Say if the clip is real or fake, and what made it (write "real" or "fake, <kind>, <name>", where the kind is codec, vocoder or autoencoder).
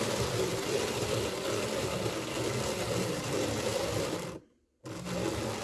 real